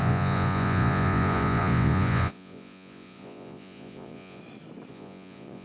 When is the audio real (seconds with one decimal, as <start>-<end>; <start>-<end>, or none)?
4.4-4.9